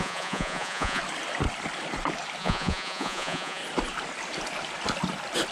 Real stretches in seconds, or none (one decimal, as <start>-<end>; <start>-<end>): 1.0-2.4; 3.6-5.5